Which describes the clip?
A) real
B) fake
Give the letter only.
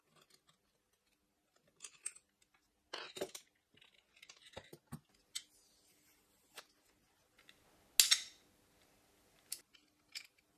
A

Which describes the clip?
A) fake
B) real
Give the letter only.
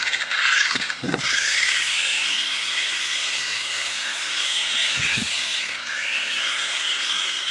A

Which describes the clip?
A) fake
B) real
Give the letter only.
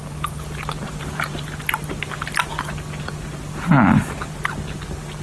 B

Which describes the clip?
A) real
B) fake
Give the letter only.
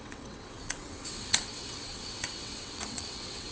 B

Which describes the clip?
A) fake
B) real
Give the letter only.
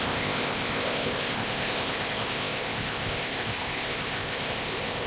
A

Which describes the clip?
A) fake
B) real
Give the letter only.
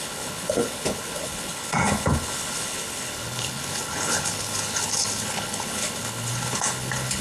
A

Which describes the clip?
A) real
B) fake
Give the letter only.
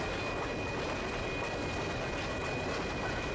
A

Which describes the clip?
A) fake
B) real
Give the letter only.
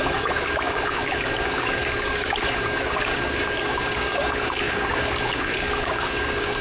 A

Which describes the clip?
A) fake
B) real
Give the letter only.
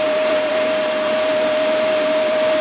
A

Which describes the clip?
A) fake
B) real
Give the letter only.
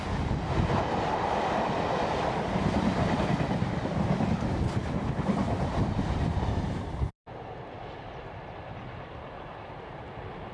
A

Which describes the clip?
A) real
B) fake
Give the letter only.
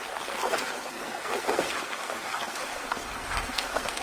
B